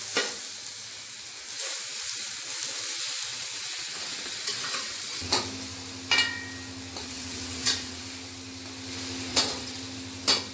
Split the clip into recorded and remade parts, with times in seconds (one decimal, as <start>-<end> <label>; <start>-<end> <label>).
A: 0.0-3.3 recorded; 3.3-5.4 remade; 5.4-7.0 recorded; 7.0-8.0 remade; 8.0-9.3 recorded; 9.3-9.8 remade; 9.8-10.5 recorded